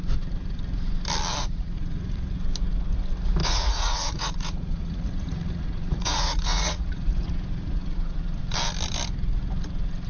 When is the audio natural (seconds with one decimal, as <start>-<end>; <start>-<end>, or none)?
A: 0.0-1.4; 2.3-3.4; 8.4-10.1